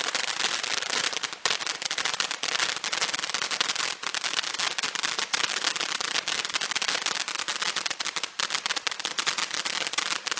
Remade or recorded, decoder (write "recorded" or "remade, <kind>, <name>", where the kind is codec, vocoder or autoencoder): recorded